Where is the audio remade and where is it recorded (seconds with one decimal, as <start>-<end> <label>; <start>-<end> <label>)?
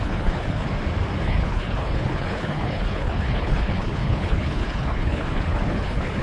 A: 0.0-0.7 remade; 0.7-1.2 recorded; 1.2-6.2 remade